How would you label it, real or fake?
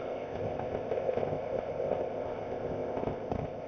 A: fake